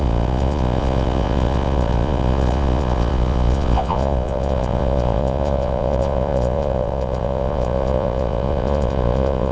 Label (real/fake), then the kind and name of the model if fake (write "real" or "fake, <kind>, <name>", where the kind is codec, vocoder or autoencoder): fake, vocoder, Vocos